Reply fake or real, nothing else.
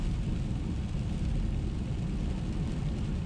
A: real